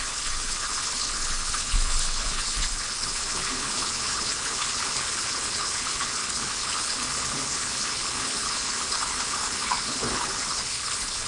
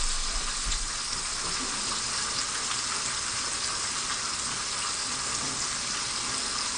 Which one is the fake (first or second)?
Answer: first